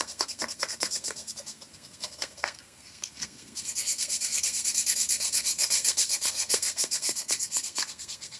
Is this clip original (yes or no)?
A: no